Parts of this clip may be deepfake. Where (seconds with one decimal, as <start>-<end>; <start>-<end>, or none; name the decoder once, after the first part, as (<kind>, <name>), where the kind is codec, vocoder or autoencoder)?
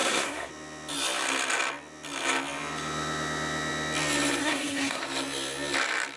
0.0-0.5 (codec, SNAC); 4.4-5.0